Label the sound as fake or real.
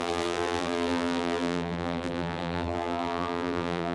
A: fake